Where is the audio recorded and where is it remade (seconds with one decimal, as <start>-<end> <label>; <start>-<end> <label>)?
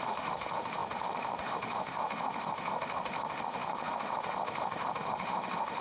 0.0-5.8 remade